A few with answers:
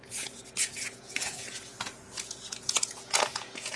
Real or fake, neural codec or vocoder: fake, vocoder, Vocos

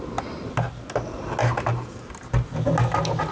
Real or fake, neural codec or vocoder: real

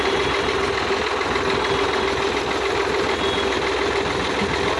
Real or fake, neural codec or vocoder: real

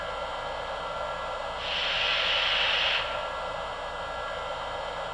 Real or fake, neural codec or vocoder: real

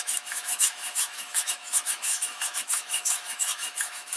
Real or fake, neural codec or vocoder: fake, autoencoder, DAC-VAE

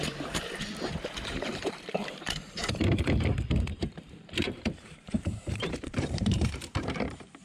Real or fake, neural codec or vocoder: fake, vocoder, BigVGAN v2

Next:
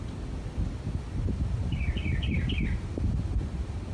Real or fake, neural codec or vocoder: real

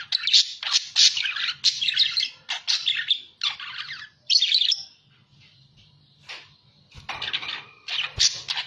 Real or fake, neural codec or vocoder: real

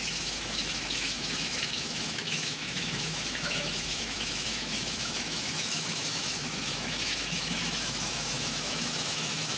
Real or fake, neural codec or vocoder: fake, autoencoder, DAC-VAE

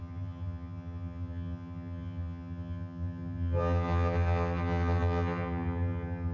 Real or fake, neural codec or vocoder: fake, vocoder, HiFi-GAN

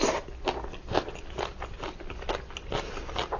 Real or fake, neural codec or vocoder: real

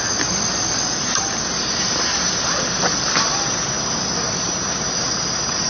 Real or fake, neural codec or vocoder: real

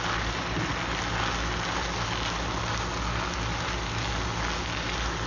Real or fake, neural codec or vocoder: real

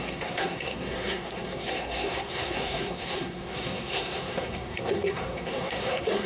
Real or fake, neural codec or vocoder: fake, codec, SNAC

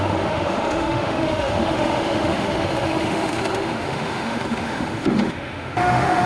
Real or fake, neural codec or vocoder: fake, autoencoder, DAC-VAE